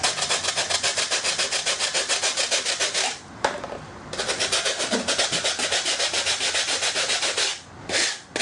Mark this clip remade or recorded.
recorded